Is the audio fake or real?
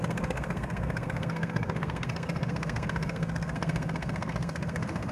fake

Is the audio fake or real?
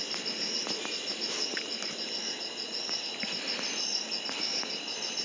real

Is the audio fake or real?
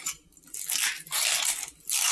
real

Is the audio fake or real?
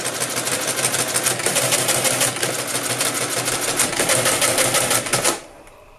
real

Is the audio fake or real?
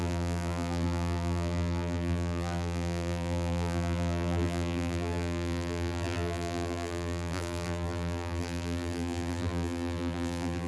fake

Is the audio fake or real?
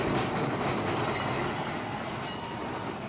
real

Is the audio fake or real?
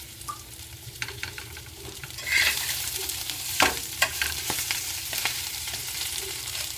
fake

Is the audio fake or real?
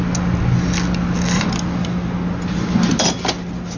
real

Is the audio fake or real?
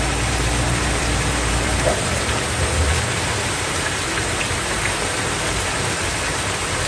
fake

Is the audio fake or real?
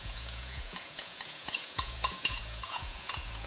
fake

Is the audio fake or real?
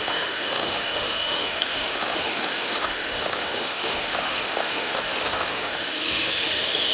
fake